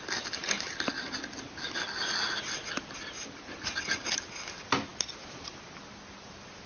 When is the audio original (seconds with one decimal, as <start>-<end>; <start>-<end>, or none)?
0.0-6.7